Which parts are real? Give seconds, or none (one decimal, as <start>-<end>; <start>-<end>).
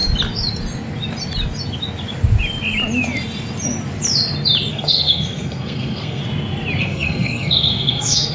0.0-4.7; 6.2-6.8